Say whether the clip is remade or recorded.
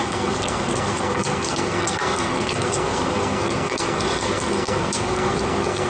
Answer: remade